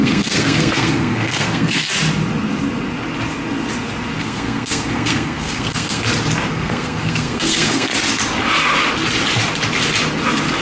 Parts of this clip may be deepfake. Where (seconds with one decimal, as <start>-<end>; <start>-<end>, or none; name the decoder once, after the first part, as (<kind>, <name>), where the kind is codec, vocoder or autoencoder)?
0.0-1.8 (codec, SNAC); 4.2-6.0; 6.5-7.9